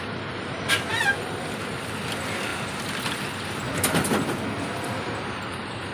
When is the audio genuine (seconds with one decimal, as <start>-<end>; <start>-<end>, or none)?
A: 0.0-5.9

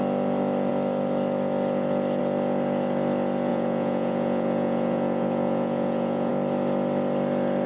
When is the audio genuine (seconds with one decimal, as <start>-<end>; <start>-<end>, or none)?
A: 0.0-3.5; 6.3-7.7

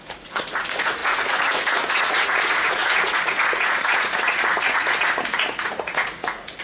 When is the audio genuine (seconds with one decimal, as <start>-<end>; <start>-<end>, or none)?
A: none

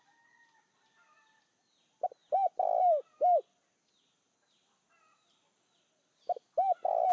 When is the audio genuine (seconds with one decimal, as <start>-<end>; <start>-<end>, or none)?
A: 0.0-7.1